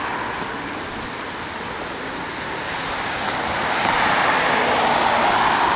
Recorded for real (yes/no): yes